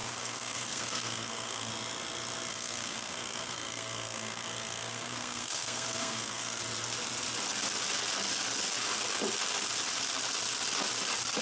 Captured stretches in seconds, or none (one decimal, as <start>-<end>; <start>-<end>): 1.7-2.5; 6.6-11.4